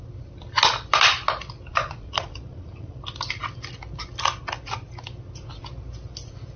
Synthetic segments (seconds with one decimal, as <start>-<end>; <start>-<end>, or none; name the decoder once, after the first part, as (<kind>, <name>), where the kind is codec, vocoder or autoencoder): 1.7-3.0 (vocoder, Vocos)